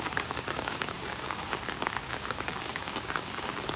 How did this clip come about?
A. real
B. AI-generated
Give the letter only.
B